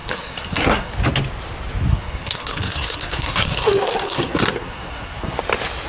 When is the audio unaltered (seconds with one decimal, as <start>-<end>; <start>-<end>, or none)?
0.9-1.9; 5.4-5.9